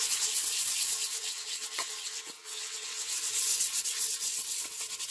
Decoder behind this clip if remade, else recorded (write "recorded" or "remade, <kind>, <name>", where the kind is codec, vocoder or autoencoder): remade, vocoder, WaveNeXt